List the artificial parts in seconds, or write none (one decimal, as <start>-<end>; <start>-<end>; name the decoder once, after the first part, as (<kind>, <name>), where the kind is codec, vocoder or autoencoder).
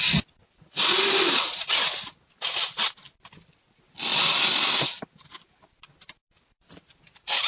none